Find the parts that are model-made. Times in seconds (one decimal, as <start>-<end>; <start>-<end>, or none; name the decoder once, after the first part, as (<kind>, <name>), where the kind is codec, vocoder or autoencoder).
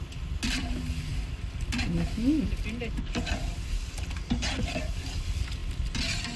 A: none